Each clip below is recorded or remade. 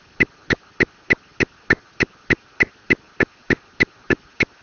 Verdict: recorded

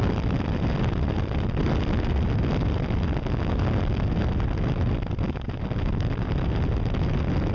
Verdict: recorded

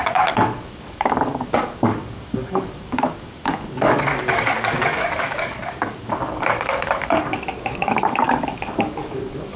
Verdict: remade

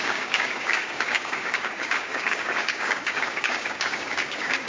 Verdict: remade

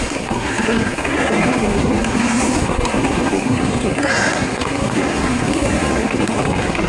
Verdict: remade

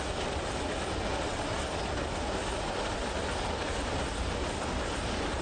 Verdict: recorded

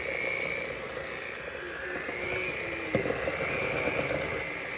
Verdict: recorded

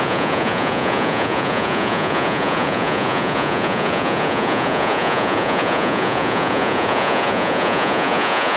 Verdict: remade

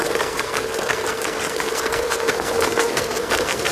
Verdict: remade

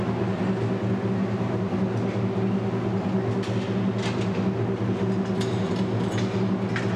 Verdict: recorded